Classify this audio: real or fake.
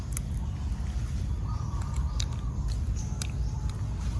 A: real